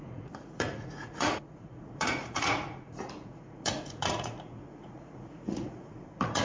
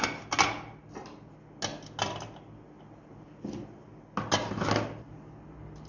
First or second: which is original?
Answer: second